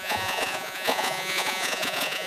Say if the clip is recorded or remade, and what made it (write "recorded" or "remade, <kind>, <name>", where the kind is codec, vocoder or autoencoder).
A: remade, vocoder, Vocos